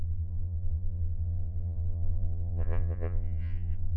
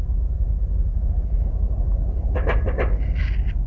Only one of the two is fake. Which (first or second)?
first